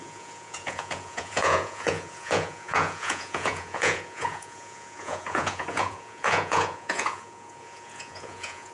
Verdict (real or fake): fake